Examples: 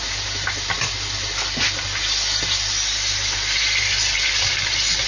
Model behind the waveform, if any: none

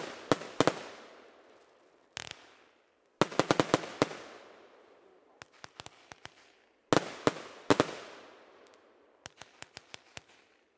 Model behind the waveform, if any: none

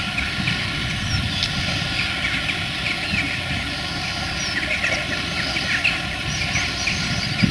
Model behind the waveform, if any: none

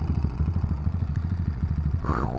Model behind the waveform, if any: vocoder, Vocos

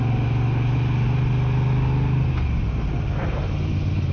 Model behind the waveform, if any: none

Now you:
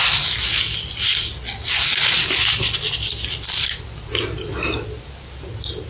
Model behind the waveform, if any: none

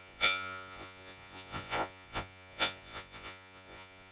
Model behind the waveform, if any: vocoder, Vocos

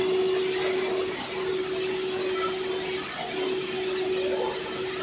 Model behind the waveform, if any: none